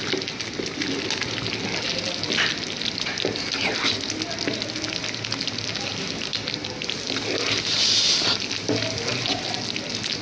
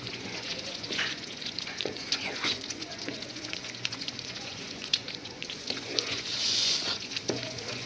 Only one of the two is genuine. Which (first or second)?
first